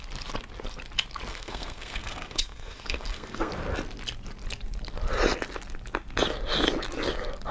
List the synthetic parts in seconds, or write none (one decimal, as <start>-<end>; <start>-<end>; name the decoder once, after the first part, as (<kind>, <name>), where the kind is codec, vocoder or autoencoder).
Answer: 1.3-3.5 (codec, SNAC)

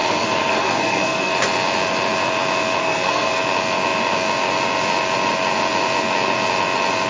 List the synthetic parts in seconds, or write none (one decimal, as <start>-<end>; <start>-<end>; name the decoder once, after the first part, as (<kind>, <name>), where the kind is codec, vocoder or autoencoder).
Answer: 0.0-1.3 (codec, SNAC); 2.8-3.4

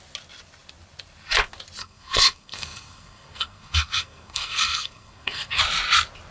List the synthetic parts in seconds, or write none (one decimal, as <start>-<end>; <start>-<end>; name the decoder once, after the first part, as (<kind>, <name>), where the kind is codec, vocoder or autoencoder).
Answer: 1.8-5.6 (codec, SNAC)

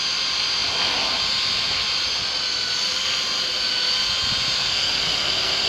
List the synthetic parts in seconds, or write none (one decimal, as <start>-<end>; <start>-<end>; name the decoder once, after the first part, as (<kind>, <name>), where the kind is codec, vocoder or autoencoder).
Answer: 4.6-5.7 (codec, SNAC)

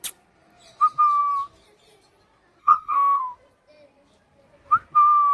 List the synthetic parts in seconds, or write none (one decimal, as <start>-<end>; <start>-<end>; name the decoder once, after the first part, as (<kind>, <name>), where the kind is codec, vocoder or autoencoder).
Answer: 2.6-3.2 (codec, SNAC)

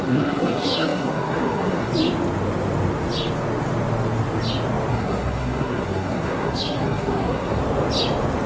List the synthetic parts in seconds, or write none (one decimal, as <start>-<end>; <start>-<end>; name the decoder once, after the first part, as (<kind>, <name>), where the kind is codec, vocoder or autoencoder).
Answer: 0.0-1.9 (codec, SNAC); 4.9-7.6